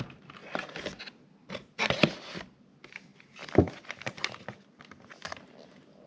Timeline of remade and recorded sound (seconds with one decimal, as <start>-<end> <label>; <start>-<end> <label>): 0.0-6.1 recorded